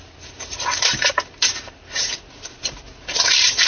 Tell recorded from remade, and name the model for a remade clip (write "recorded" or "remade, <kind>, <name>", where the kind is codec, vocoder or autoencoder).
recorded